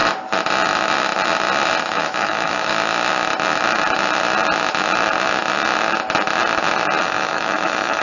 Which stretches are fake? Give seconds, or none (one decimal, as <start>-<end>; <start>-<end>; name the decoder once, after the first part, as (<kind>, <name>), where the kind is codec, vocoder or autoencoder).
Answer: 1.8-2.7 (autoencoder, DAC-VAE); 7.0-8.0